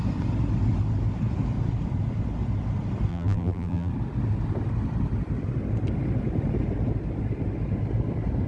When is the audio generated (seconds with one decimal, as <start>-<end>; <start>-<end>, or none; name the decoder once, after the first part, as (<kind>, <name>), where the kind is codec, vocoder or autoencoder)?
3.1-3.9 (vocoder, BigVGAN v2)